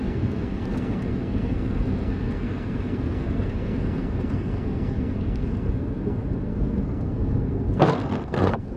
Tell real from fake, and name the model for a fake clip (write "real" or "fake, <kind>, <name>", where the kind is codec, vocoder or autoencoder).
fake, codec, SNAC